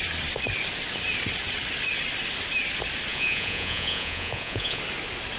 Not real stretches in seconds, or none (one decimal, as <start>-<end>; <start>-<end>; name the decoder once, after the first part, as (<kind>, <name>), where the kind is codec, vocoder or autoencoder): 3.1-4.8 (vocoder, Vocos)